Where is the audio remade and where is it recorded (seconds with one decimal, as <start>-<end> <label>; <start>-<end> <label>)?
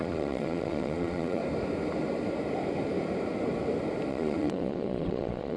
0.0-1.4 remade; 1.4-4.1 recorded; 4.1-5.6 remade